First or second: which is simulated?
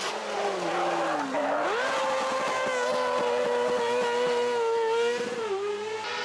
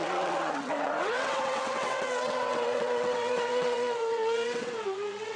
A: second